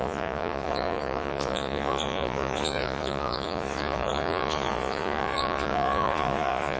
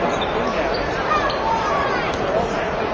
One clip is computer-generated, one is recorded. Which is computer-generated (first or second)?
first